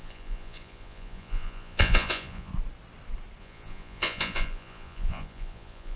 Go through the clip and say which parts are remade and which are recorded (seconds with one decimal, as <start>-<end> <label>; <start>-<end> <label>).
0.0-2.5 remade; 2.5-3.4 recorded; 3.4-6.0 remade